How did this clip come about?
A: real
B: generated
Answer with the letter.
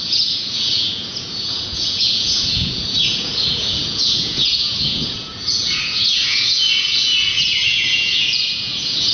B